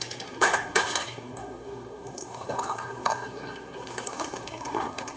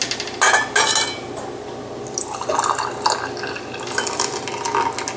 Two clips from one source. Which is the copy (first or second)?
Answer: first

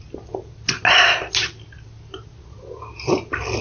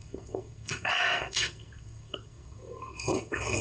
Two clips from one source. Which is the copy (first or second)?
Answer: second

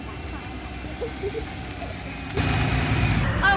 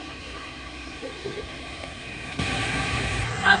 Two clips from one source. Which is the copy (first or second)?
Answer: second